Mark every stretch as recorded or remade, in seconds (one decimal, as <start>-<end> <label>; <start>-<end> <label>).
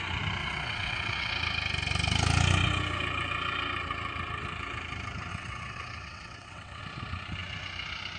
0.0-0.4 recorded; 0.4-1.3 remade; 1.3-5.3 recorded; 5.3-6.8 remade; 6.8-8.2 recorded